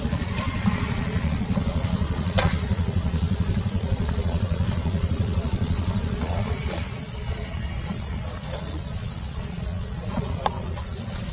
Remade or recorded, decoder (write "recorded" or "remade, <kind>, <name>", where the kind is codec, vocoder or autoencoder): remade, vocoder, Vocos